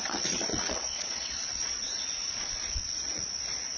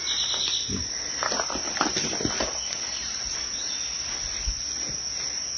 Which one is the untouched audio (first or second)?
second